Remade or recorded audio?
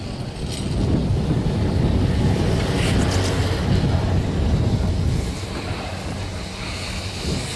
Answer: recorded